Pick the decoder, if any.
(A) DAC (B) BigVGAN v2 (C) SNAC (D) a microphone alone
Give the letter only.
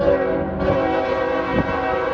D